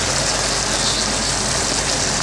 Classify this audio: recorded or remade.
recorded